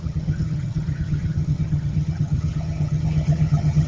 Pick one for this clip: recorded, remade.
remade